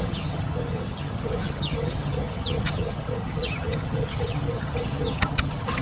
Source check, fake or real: fake